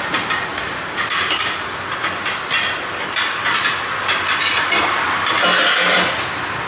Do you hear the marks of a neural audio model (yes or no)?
no